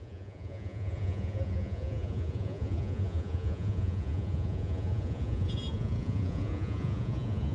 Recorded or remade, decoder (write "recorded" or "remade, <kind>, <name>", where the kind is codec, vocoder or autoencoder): remade, vocoder, Vocos